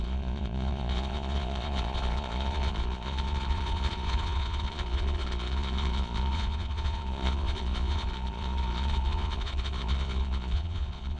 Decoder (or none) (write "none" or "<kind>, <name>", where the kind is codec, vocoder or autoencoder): vocoder, Vocos